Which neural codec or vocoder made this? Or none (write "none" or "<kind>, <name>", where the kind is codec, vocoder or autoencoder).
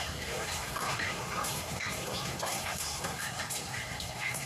codec, SNAC